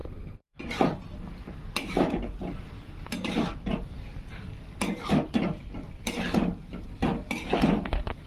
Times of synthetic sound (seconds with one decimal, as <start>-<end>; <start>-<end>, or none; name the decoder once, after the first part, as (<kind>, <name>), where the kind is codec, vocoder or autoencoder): 0.0-0.6 (codec, SNAC)